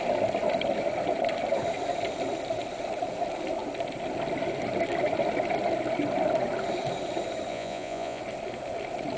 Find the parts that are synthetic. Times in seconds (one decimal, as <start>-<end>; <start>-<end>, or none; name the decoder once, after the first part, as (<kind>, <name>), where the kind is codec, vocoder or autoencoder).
7.5-8.2 (vocoder, Vocos)